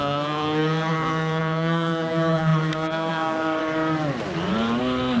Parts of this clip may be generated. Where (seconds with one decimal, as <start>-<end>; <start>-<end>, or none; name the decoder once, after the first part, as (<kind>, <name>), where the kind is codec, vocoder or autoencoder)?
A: 0.0-3.6 (codec, SNAC); 4.8-5.2